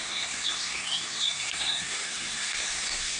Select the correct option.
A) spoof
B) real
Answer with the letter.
A